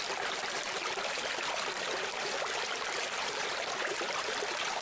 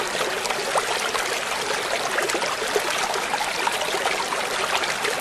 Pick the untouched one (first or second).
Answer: second